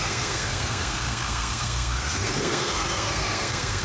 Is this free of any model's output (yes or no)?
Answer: no